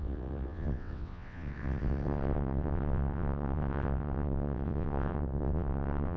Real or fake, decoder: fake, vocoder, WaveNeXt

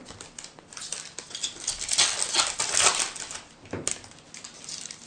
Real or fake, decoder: real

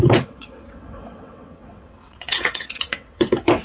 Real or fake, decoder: fake, vocoder, WaveNeXt